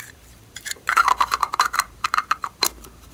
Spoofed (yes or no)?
yes